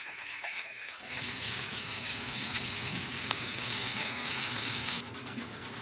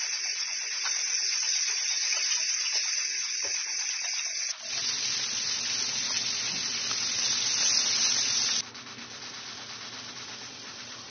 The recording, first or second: second